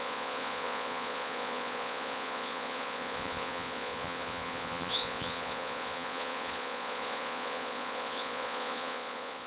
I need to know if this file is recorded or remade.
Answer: remade